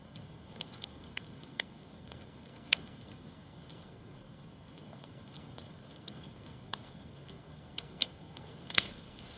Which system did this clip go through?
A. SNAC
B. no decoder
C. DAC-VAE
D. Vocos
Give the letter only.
A